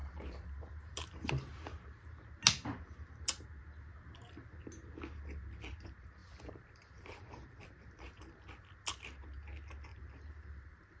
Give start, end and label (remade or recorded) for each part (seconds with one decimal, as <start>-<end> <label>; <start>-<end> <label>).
0.0-1.3 remade; 1.3-6.2 recorded; 6.2-8.0 remade; 8.0-9.9 recorded; 9.9-11.0 remade